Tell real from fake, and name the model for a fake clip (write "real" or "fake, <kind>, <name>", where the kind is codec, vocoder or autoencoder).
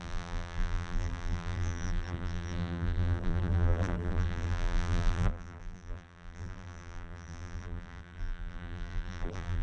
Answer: fake, vocoder, BigVGAN v2